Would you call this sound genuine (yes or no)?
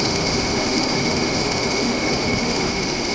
no